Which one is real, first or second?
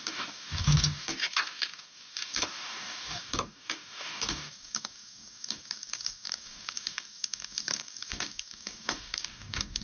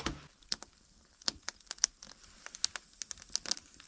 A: second